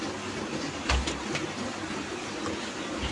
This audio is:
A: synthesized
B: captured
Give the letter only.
B